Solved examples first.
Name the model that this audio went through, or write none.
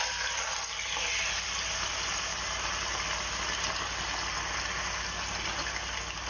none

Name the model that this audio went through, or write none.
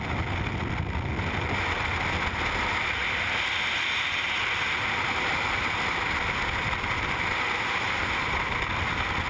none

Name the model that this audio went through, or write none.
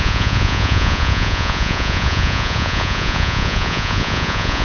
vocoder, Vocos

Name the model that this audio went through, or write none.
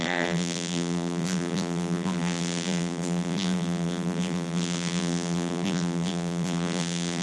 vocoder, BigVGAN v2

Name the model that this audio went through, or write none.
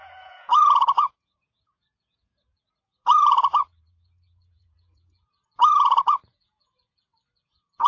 vocoder, Vocos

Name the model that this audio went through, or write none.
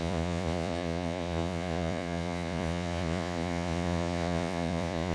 vocoder, Vocos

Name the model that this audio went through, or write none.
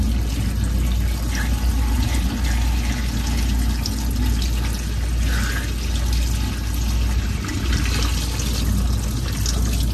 none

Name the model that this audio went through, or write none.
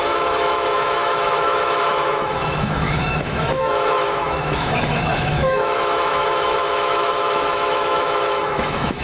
autoencoder, DAC-VAE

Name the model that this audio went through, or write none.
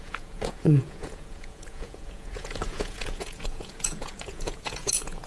vocoder, Vocos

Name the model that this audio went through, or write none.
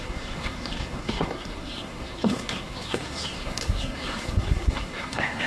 codec, SNAC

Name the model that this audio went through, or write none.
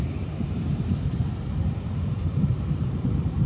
vocoder, BigVGAN v2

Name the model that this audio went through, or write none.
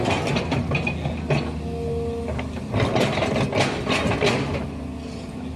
none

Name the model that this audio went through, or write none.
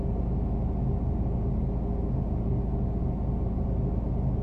none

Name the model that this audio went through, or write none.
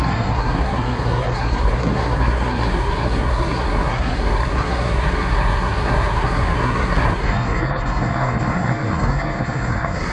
codec, SNAC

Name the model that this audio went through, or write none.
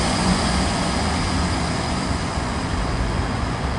vocoder, Vocos